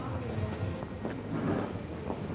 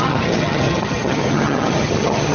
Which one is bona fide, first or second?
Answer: first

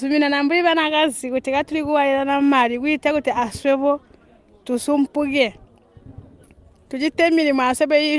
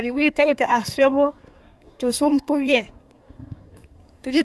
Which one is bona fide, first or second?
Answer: first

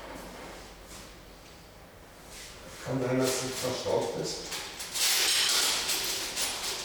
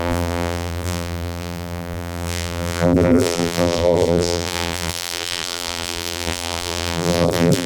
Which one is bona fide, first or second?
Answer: first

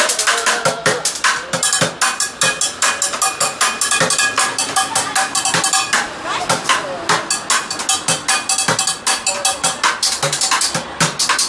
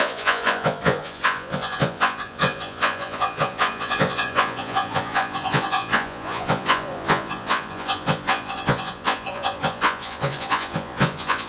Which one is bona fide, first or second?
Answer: first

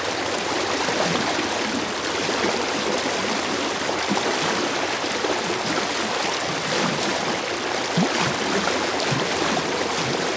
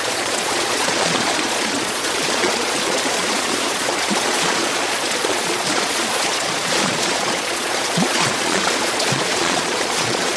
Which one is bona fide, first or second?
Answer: first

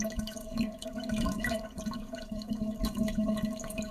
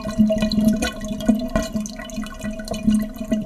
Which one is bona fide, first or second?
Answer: second